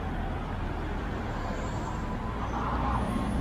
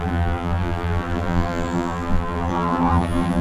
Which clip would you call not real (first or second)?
second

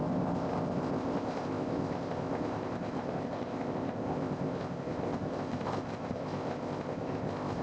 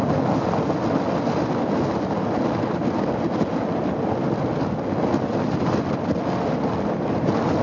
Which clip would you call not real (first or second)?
first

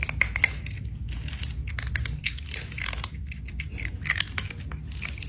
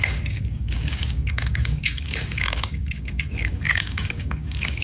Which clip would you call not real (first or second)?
second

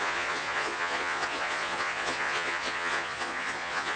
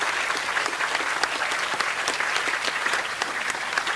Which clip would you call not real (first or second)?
first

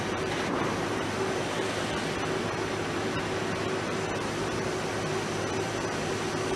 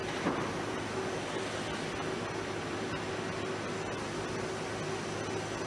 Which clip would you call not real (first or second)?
first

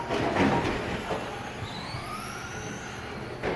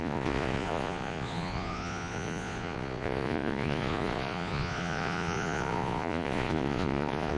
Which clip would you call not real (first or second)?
second